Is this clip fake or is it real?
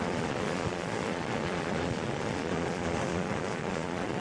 fake